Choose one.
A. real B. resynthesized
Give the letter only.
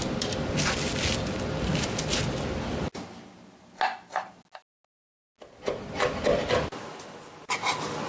A